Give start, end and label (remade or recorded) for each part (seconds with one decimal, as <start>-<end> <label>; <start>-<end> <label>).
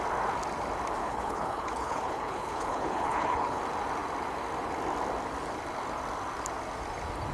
0.0-1.0 recorded; 1.0-3.6 remade; 3.6-7.3 recorded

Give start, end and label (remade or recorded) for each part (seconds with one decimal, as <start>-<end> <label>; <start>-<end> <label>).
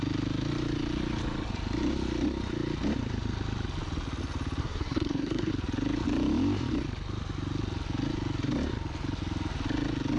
0.0-4.6 recorded; 4.6-5.5 remade; 5.5-10.2 recorded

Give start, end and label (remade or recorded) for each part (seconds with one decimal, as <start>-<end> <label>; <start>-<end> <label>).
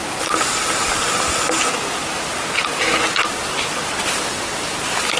0.0-5.2 recorded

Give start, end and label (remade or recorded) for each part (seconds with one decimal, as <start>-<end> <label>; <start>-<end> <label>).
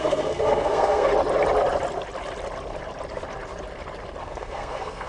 0.0-1.1 remade; 1.1-4.2 recorded; 4.2-5.1 remade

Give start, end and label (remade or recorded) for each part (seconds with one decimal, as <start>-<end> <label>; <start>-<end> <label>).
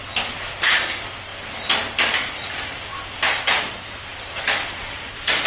0.0-4.1 recorded; 4.1-5.5 remade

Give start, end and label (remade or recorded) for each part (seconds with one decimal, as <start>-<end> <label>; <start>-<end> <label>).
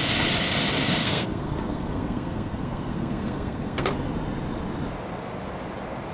0.0-1.0 recorded; 1.0-3.9 remade; 3.9-6.1 recorded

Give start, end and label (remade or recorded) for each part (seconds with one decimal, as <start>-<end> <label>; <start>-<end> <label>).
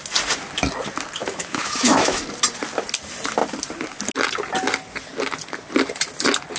0.0-1.2 recorded; 1.2-2.2 remade; 2.2-6.6 recorded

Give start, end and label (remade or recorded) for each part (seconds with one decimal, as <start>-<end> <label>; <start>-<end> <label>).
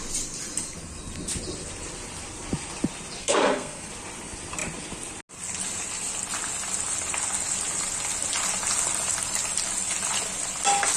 0.0-3.2 recorded; 3.2-3.9 remade; 3.9-11.0 recorded